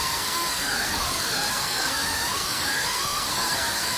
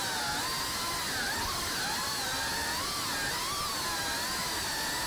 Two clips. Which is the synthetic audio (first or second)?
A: first